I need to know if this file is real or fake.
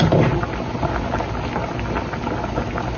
real